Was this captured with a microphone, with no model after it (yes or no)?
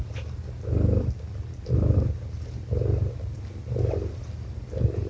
yes